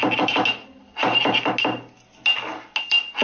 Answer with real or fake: real